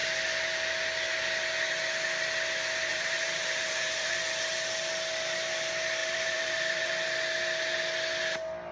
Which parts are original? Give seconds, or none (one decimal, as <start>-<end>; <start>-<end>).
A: 0.0-2.9; 4.2-6.0; 6.9-8.7

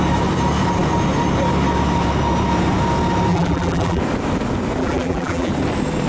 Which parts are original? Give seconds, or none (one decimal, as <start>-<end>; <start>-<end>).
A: 0.0-3.3; 4.0-4.8; 5.5-6.1

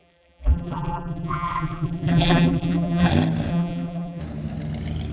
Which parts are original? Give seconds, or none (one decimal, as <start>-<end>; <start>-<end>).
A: 3.1-3.5; 4.2-5.1

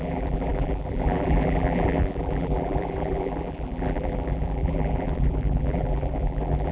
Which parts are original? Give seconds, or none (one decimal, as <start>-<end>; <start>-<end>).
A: none

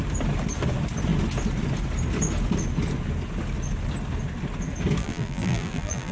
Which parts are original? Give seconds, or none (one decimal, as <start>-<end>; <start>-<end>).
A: 0.0-5.0

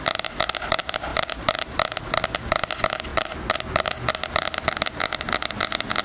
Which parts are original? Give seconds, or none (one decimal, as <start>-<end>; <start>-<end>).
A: 0.0-6.0